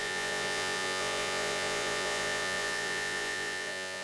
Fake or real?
fake